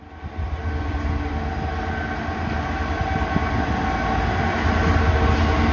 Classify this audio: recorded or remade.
recorded